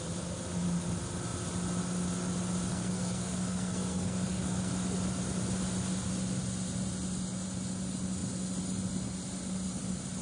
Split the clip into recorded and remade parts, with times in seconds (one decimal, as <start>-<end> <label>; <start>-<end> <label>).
0.0-2.7 recorded; 2.7-4.7 remade; 4.7-10.2 recorded